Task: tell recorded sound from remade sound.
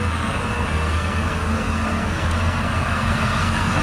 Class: remade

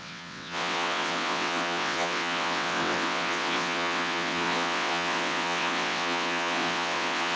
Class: remade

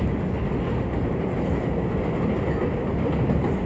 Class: recorded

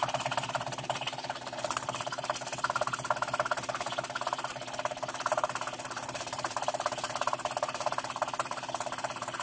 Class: recorded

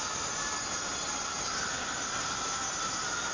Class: recorded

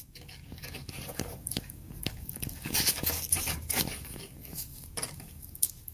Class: remade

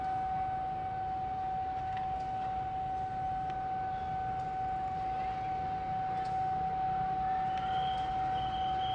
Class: recorded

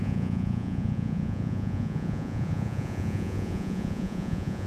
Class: remade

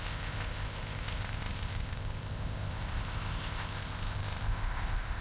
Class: remade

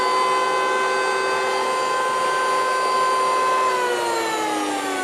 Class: recorded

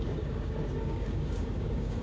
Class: remade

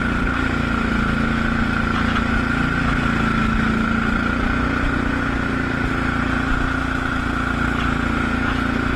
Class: recorded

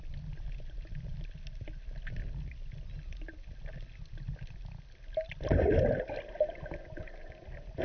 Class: recorded